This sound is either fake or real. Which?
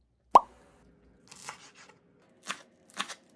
real